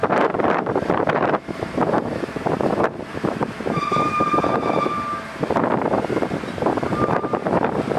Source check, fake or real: fake